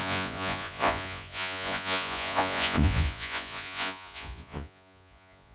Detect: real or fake fake